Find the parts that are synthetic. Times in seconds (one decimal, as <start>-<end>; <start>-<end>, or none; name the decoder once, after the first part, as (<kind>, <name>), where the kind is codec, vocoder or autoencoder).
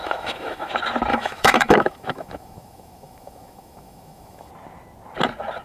0.0-0.7 (autoencoder, DAC-VAE); 1.1-4.5